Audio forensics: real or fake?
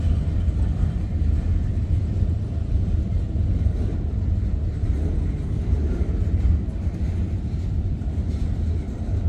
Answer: real